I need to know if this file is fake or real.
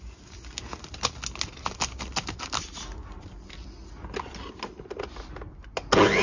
real